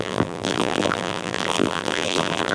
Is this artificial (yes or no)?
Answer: yes